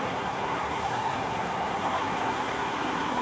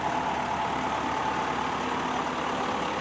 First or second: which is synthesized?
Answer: first